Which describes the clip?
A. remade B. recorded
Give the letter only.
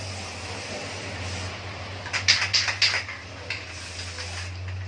B